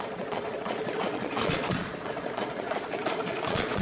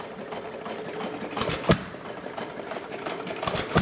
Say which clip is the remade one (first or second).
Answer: first